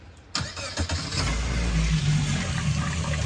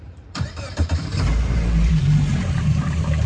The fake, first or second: second